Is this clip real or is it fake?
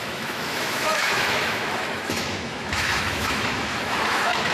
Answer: fake